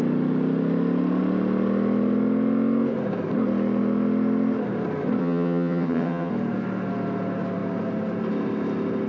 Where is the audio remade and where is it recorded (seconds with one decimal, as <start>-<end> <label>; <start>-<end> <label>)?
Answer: 0.0-5.2 recorded; 5.2-6.3 remade; 6.3-9.1 recorded